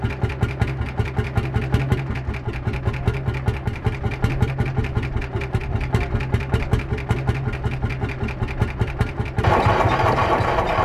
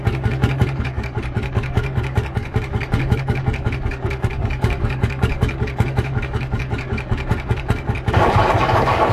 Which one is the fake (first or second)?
second